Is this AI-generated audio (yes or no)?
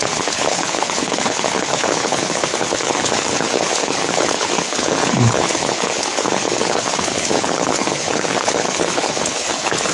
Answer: yes